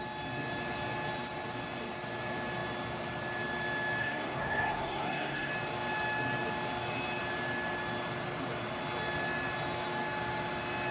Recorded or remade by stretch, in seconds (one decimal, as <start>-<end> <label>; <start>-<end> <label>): 0.0-4.0 recorded; 4.0-5.5 remade; 5.5-10.9 recorded